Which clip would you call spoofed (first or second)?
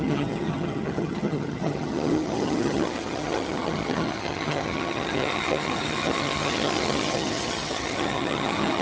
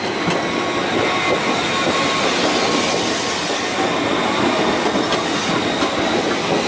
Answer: first